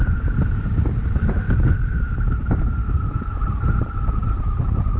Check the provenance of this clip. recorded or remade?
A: recorded